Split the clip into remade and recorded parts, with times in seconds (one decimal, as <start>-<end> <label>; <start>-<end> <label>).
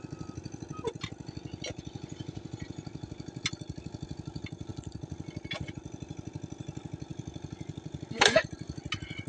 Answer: 0.0-4.7 recorded; 4.7-5.6 remade; 5.6-7.1 recorded; 7.1-8.8 remade; 8.8-9.3 recorded